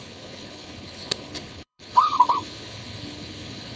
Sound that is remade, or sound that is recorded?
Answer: remade